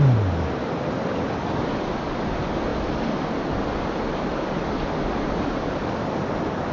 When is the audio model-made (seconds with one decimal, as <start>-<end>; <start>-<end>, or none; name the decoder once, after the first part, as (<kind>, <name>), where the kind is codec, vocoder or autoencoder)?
none